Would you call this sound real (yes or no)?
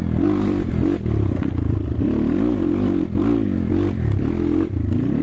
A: no